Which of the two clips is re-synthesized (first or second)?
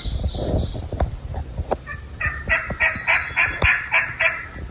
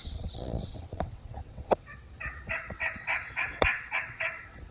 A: second